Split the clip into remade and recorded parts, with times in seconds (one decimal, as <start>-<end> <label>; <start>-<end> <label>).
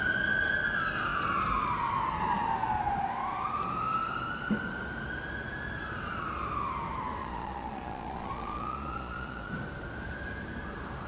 0.0-7.2 recorded; 7.2-9.5 remade; 9.5-11.1 recorded